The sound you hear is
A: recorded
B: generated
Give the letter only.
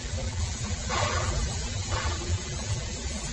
B